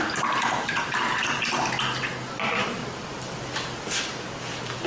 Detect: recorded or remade recorded